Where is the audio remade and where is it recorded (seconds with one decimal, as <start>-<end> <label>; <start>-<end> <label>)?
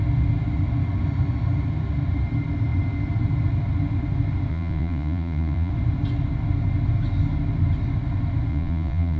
0.0-4.5 recorded; 4.5-5.7 remade; 5.7-8.5 recorded; 8.5-9.2 remade